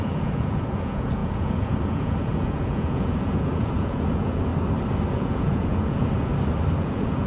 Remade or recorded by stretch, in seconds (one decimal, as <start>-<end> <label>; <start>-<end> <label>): 0.0-4.5 remade; 4.5-5.1 recorded; 5.1-6.3 remade; 6.3-6.8 recorded; 6.8-7.3 remade